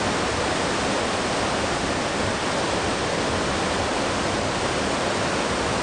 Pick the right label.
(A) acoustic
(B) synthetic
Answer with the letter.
A